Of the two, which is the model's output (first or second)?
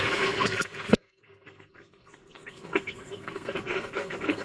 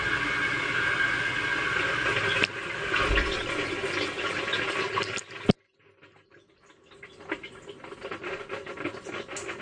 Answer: first